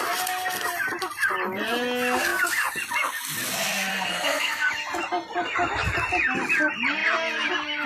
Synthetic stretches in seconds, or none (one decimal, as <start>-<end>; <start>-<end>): 3.9-4.7